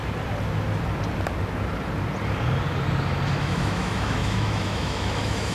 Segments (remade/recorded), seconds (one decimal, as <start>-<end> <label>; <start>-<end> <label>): 0.0-3.3 recorded; 3.3-5.5 remade